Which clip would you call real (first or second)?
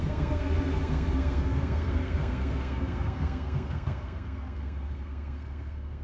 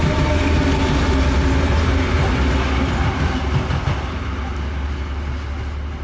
second